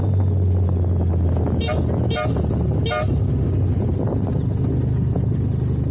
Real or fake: real